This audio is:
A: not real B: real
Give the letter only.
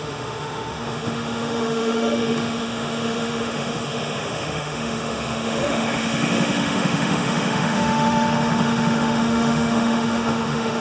A